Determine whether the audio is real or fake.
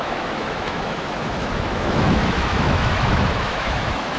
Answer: fake